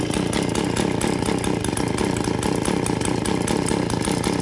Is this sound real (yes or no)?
yes